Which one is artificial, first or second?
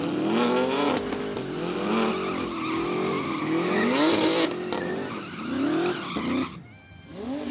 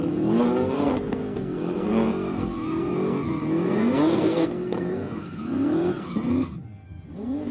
second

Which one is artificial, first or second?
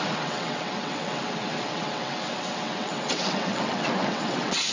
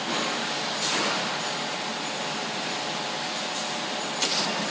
first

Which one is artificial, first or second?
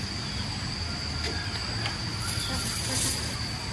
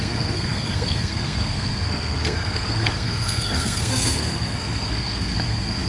second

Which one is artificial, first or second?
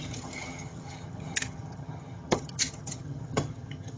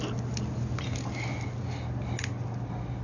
first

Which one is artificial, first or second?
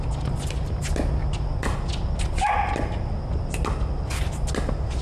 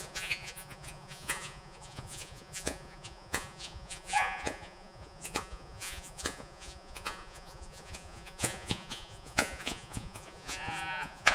second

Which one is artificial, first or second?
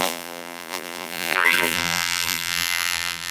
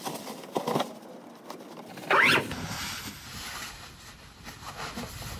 first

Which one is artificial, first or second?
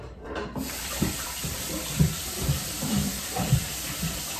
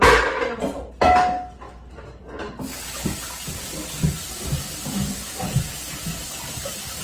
first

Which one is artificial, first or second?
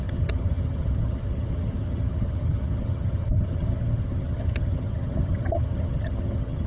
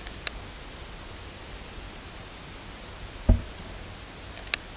first